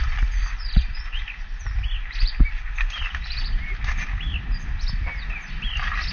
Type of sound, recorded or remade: recorded